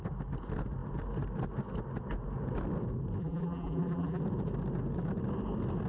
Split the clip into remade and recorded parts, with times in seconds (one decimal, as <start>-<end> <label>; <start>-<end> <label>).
0.0-3.2 recorded; 3.2-4.2 remade; 4.2-5.9 recorded